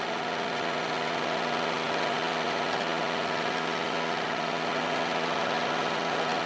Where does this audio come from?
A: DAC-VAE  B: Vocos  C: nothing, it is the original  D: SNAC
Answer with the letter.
C